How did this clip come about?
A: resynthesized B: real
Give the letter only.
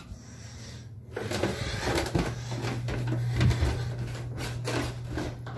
B